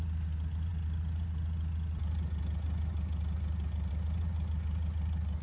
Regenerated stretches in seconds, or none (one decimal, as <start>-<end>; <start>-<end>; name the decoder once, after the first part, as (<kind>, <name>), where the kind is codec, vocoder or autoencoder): none